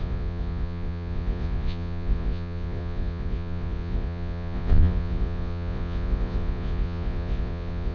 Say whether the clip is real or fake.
fake